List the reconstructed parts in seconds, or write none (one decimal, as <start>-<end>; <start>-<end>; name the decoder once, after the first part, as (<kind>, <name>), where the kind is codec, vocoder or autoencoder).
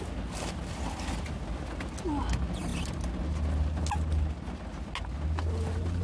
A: none